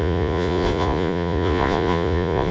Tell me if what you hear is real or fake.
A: fake